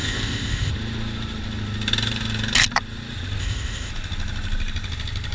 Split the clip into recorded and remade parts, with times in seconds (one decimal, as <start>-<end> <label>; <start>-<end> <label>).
0.0-0.7 remade; 0.7-3.4 recorded; 3.4-3.9 remade; 3.9-5.3 recorded

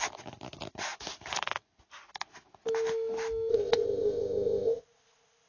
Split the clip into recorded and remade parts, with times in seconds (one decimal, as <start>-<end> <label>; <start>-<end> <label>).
0.0-3.5 recorded; 3.5-5.5 remade